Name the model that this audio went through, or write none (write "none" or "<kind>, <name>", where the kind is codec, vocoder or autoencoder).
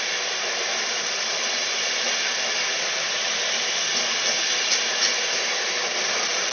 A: none